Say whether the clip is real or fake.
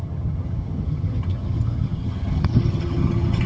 fake